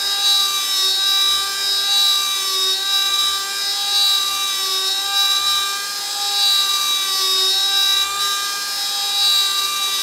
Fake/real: real